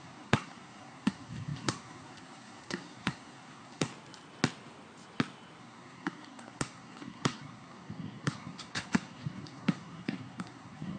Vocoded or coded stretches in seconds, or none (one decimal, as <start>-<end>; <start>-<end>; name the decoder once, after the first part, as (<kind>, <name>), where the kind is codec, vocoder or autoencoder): 0.0-3.9 (codec, SNAC); 5.6-11.0